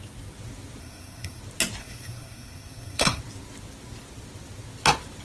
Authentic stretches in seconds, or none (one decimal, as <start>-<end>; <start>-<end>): 0.0-0.8; 1.4-1.8; 3.2-5.2